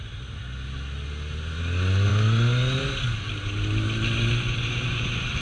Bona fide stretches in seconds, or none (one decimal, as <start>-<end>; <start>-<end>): 0.0-5.4